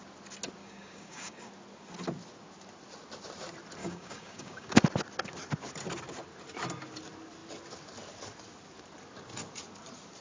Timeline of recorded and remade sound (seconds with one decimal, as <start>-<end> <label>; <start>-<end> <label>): 0.0-0.6 recorded; 0.6-1.5 remade; 1.5-3.8 recorded; 3.8-4.8 remade; 4.8-10.2 recorded